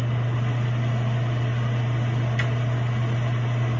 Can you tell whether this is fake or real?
real